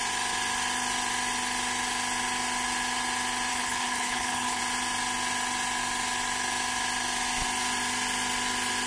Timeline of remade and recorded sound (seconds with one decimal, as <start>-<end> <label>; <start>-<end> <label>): 0.0-3.5 recorded; 3.5-4.6 remade; 4.6-8.9 recorded